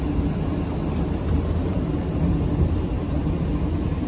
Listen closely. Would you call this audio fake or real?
real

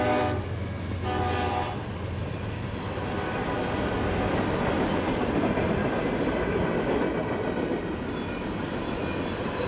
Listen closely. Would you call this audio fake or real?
real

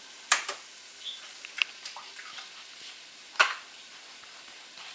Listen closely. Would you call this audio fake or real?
real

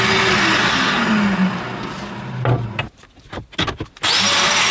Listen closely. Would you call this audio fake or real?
real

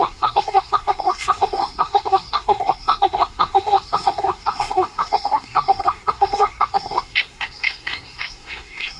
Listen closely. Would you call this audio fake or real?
fake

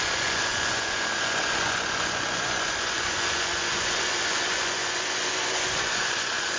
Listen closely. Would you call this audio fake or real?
fake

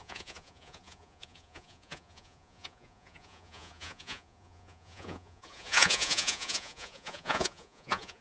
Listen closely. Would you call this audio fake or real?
fake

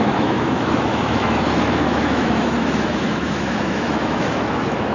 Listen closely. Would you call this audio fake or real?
fake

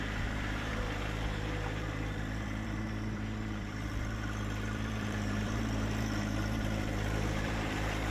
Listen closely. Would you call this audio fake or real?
fake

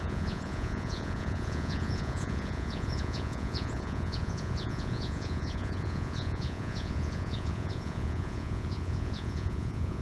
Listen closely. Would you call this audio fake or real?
fake